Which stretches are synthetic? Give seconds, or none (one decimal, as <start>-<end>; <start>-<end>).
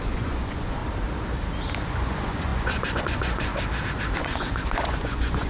0.0-0.8; 1.9-3.5; 4.2-5.5